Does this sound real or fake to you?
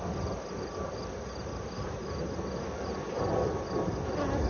real